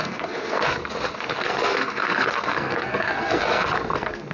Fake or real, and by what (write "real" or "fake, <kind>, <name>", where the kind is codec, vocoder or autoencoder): fake, codec, SNAC